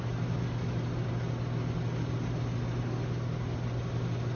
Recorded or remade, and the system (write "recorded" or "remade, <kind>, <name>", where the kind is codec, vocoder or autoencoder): recorded